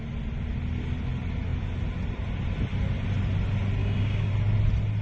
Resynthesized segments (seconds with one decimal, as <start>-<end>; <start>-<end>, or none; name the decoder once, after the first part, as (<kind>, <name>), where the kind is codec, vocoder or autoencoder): 3.8-4.3 (codec, DAC)